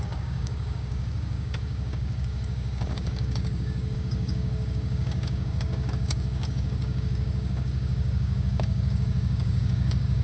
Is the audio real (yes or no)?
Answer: no